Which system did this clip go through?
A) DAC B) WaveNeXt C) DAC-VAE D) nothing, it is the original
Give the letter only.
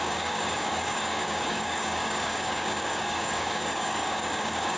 A